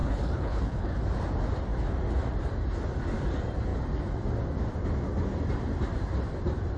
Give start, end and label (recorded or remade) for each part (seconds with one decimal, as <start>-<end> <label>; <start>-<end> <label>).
0.0-1.0 remade; 1.0-6.8 recorded